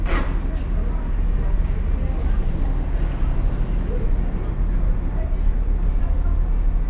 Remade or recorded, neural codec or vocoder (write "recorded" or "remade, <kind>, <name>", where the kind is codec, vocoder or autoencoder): recorded